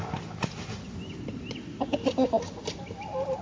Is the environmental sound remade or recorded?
recorded